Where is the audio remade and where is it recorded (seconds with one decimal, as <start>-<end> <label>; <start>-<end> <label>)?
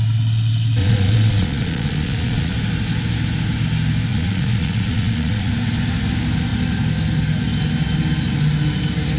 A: 0.0-0.8 recorded; 0.8-2.5 remade; 2.5-4.1 recorded; 4.1-5.5 remade; 5.5-9.2 recorded